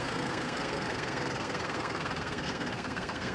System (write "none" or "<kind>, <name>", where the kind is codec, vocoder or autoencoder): codec, SNAC